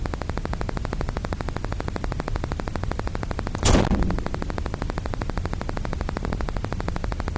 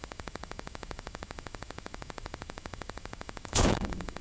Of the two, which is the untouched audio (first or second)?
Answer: first